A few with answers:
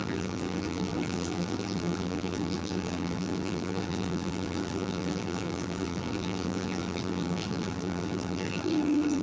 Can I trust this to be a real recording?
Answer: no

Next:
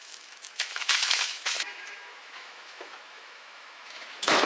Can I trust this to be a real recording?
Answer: no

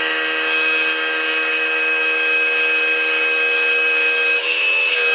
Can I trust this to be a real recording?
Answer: no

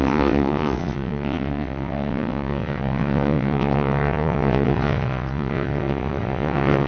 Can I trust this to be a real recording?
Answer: no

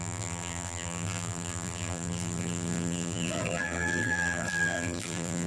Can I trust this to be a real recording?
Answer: no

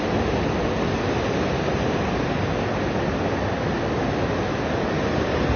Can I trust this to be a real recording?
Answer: yes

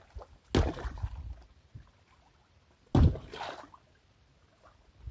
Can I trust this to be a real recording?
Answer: yes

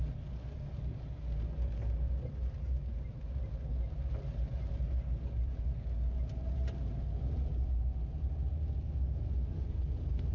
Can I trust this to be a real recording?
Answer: yes